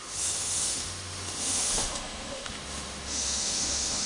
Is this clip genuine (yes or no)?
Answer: no